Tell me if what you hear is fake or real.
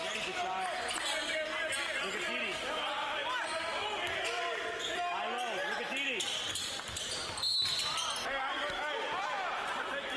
real